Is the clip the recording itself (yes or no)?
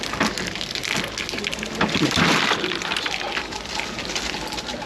yes